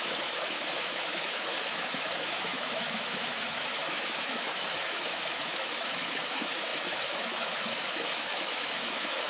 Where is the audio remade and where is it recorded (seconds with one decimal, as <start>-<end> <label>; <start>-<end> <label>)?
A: 0.0-9.3 remade